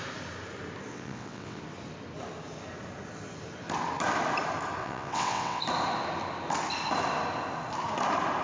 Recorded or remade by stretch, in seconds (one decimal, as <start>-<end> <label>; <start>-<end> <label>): 0.0-0.9 recorded; 0.9-1.6 remade; 1.6-4.8 recorded; 4.8-5.6 remade; 5.6-8.4 recorded